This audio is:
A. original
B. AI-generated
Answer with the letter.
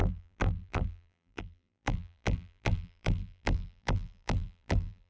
B